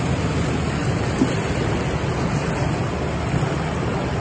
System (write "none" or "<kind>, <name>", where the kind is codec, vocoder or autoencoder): none